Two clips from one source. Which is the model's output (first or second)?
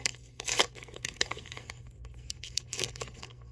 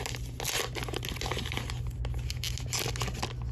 first